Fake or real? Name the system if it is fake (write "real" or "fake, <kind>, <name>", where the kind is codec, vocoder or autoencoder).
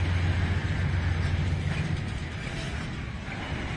real